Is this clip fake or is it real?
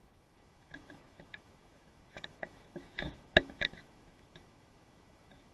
fake